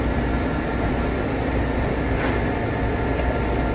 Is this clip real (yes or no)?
yes